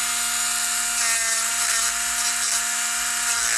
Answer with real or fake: real